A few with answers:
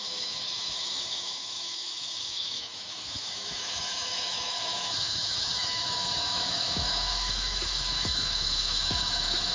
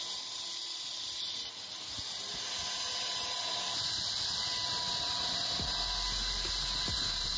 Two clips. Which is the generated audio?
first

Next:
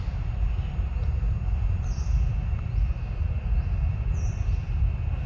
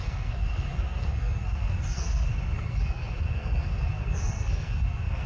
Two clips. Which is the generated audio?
second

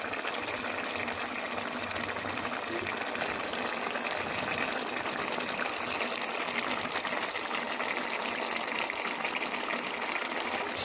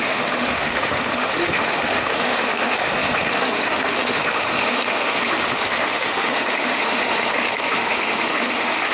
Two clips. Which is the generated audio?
second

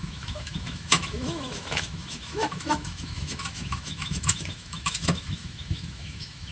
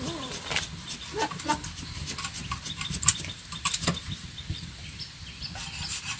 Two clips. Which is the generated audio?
first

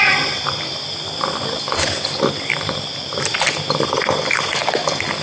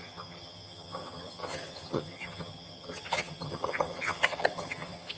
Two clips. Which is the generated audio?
second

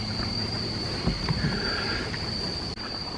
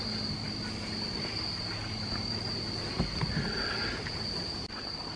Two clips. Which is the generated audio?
first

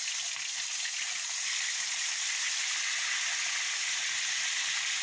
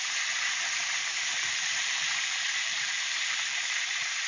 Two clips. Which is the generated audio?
second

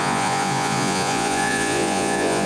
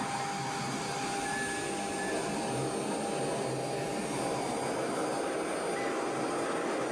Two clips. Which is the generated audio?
first